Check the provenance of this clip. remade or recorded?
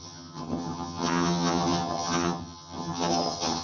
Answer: remade